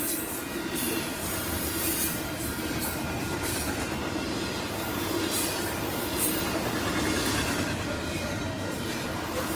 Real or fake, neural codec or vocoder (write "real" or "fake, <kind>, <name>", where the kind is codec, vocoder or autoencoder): fake, vocoder, BigVGAN v2